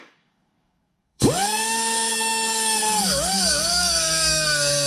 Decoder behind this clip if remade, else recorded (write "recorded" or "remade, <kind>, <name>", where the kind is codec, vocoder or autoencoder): remade, codec, DAC